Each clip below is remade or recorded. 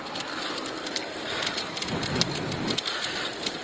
recorded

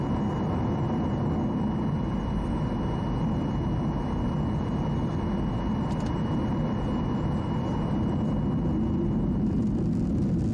recorded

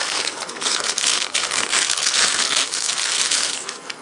remade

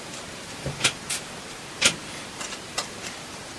remade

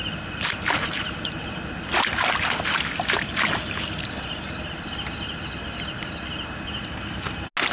recorded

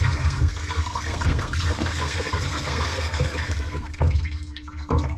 remade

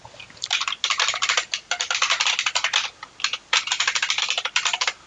recorded